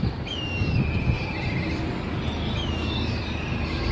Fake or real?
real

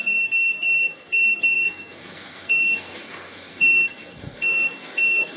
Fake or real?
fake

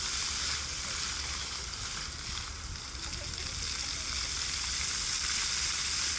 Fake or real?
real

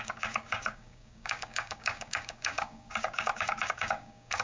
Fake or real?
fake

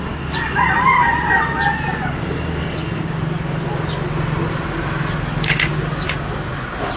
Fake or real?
real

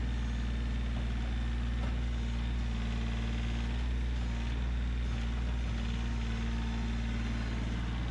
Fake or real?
real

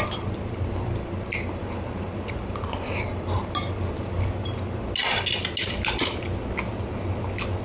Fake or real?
real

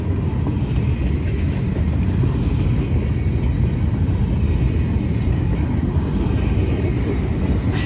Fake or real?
real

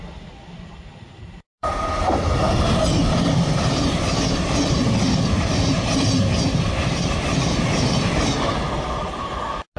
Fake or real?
real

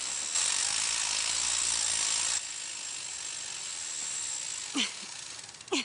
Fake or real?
real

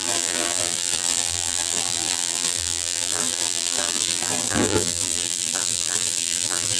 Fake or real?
fake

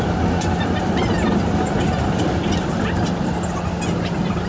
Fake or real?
real